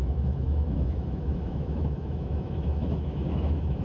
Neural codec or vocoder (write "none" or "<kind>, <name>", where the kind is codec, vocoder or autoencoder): autoencoder, DAC-VAE